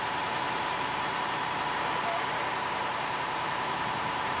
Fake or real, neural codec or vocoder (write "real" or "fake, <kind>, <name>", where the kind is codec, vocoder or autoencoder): fake, vocoder, BigVGAN v2